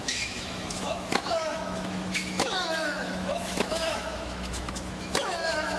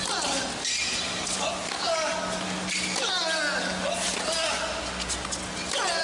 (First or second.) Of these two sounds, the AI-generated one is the first